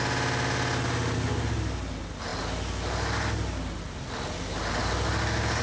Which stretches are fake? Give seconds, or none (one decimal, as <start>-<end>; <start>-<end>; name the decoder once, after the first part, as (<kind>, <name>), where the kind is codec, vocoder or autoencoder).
none